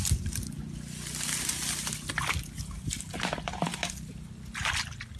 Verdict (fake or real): real